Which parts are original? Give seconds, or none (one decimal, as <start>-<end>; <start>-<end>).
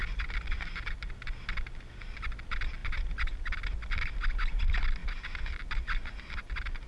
0.0-6.9